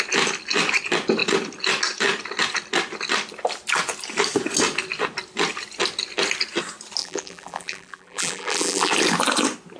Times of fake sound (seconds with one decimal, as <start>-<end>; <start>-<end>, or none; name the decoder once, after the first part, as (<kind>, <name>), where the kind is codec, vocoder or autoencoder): 7.0-8.9 (vocoder, BigVGAN v2)